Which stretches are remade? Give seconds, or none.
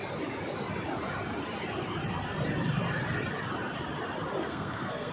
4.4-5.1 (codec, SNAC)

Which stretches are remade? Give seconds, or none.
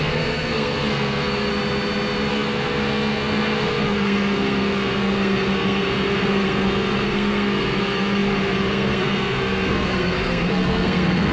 0.0-1.5 (codec, SNAC); 2.3-11.3